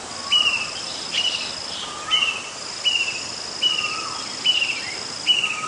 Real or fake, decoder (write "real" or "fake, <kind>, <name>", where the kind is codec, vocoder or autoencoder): real